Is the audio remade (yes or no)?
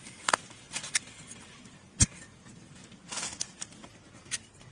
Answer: no